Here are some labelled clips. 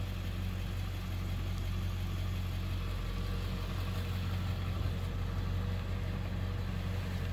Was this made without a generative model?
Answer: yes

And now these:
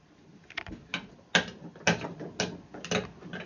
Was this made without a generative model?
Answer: yes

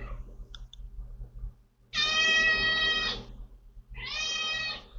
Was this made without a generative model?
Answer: yes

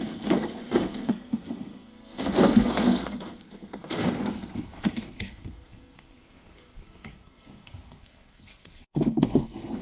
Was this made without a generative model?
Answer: no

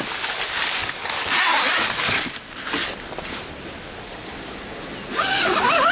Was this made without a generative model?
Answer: yes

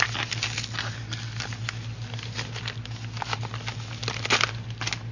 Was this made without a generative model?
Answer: yes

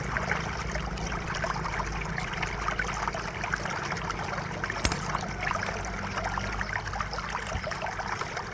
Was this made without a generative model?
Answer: yes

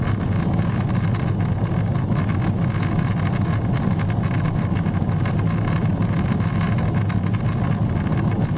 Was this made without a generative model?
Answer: yes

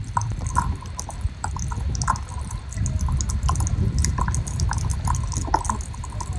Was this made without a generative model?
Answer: yes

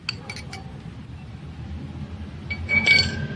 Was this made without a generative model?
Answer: yes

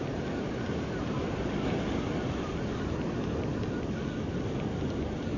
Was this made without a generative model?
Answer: yes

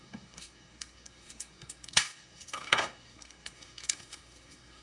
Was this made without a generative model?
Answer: no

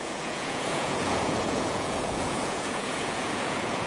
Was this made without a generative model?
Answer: no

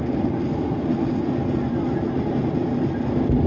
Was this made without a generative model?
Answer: yes